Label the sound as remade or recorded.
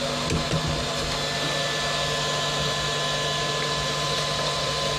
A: recorded